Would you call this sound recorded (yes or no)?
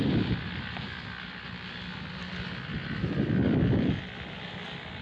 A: yes